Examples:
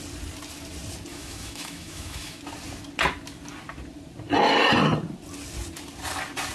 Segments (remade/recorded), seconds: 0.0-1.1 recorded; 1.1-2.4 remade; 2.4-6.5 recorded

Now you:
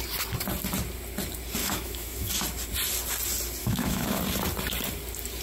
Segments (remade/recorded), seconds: 0.0-1.6 recorded; 1.6-2.3 remade; 2.3-3.6 recorded; 3.6-4.2 remade; 4.2-5.4 recorded